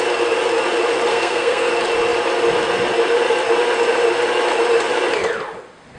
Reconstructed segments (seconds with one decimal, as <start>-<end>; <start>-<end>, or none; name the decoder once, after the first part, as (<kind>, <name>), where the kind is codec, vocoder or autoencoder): 1.1-1.7 (codec, SNAC)